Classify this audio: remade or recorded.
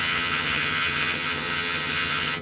remade